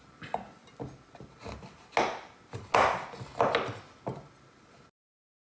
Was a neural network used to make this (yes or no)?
no